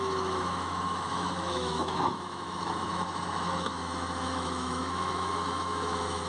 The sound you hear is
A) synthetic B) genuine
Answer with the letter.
A